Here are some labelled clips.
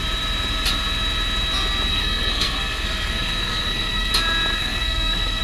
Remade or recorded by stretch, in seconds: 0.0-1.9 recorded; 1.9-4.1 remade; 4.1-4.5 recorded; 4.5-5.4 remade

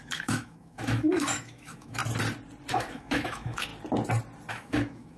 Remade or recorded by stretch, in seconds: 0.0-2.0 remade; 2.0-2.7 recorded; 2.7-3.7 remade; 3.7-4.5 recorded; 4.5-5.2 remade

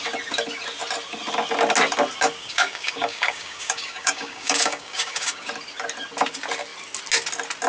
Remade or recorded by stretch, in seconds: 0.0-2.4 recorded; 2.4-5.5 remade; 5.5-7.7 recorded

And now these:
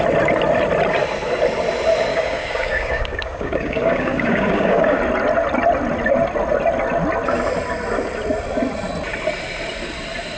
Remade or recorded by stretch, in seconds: 0.0-2.1 recorded; 2.1-5.0 remade; 5.0-10.4 recorded

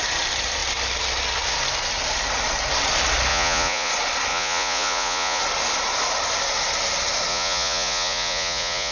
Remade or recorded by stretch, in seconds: 0.0-3.3 recorded; 3.3-3.9 remade; 3.9-4.3 recorded; 4.3-5.4 remade; 5.4-7.3 recorded; 7.3-8.9 remade

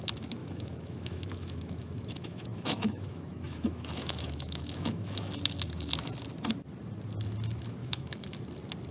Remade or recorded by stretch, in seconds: 0.0-0.4 recorded; 0.4-5.3 remade; 5.3-7.8 recorded; 7.8-8.4 remade; 8.4-8.9 recorded

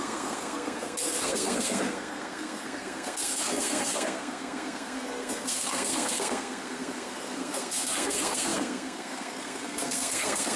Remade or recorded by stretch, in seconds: 0.0-10.6 remade